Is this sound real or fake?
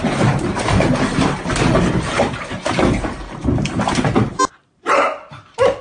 fake